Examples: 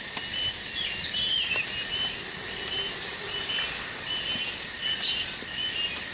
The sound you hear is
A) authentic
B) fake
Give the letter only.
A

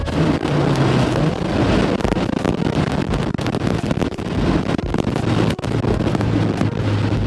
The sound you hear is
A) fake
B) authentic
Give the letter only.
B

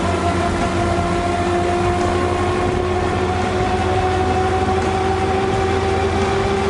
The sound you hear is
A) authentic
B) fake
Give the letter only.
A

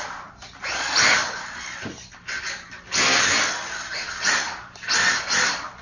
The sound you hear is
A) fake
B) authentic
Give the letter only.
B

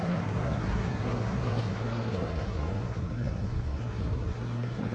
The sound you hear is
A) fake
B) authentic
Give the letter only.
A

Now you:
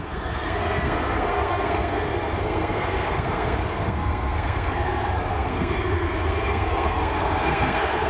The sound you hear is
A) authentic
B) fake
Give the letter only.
B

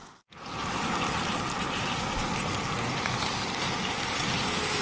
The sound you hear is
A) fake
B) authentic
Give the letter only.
B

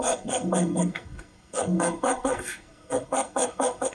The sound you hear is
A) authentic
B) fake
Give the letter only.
B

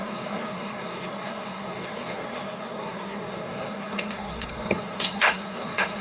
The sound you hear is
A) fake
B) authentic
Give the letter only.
A